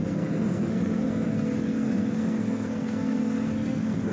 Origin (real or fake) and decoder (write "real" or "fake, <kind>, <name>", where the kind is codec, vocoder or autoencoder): fake, codec, SNAC